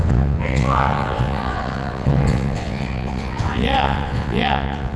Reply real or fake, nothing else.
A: fake